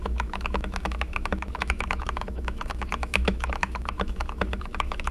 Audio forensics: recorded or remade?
remade